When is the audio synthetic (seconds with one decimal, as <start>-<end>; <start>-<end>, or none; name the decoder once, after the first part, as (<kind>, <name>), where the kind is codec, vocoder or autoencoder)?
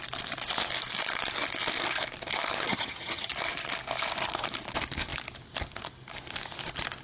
2.7-3.3 (vocoder, HiFi-GAN)